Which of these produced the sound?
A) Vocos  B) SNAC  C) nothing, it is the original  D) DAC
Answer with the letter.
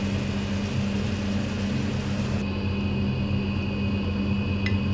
C